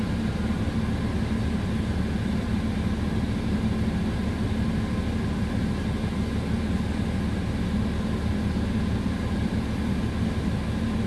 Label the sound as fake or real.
real